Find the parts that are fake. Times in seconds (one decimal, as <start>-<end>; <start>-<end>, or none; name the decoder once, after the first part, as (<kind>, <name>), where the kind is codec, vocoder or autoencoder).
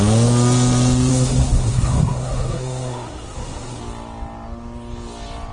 1.1-3.8 (codec, SNAC)